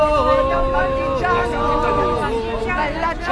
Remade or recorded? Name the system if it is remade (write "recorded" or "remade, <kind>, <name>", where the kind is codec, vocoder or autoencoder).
recorded